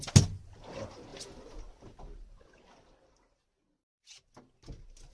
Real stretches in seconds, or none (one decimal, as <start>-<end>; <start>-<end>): 0.0-5.1